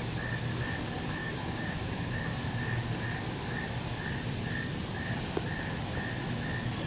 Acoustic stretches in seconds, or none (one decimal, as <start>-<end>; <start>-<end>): 0.0-1.2; 2.2-6.9

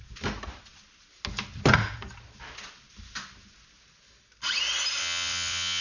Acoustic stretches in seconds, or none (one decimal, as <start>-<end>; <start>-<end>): 0.0-5.0